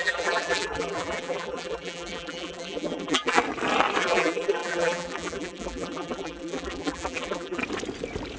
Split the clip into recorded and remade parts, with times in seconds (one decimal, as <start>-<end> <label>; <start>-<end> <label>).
0.0-3.4 remade; 3.4-4.0 recorded; 4.0-7.6 remade; 7.6-8.4 recorded